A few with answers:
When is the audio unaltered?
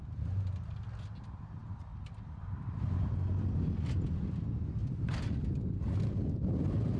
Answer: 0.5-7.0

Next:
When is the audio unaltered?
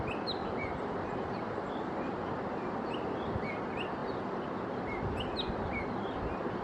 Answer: 0.0-0.4; 2.3-6.6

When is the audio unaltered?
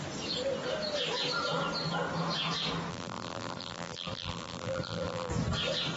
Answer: 0.0-2.9; 5.3-6.0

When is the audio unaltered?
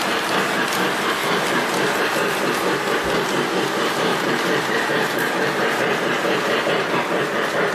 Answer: 0.0-4.1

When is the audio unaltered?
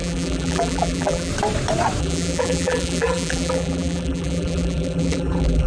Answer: 1.3-2.0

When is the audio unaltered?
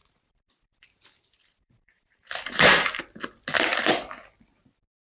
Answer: 3.0-5.0